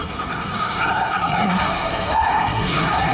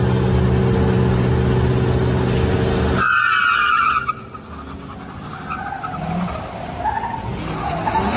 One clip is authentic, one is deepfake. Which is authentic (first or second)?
second